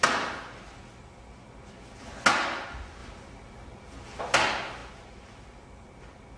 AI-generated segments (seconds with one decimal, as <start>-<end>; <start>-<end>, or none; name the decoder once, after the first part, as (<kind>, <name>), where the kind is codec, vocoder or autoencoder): none